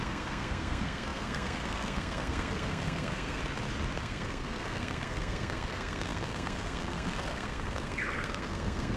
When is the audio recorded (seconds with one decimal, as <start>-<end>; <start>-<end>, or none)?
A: 3.4-4.0